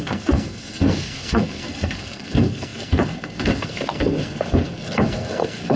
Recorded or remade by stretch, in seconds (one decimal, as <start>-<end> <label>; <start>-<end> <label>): 0.0-5.8 remade